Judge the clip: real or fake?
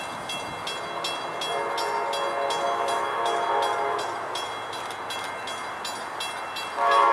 real